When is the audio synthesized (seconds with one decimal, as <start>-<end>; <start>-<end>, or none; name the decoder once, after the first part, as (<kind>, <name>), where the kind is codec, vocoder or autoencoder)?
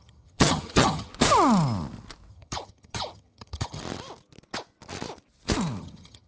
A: 0.0-1.1 (vocoder, HiFi-GAN); 2.3-3.8; 5.8-6.3